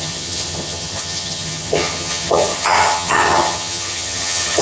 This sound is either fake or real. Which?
fake